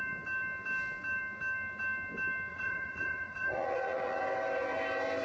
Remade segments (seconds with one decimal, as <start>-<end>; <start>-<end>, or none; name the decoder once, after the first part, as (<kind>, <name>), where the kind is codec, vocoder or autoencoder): 2.5-4.2 (vocoder, Vocos)